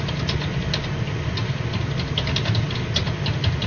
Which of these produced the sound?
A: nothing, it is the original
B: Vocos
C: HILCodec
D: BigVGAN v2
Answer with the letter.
A